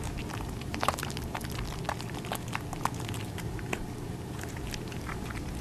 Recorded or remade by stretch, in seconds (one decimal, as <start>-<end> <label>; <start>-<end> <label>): 0.0-1.4 remade; 1.4-3.2 recorded; 3.2-5.6 remade